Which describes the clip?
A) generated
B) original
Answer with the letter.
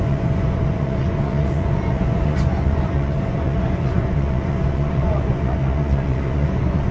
A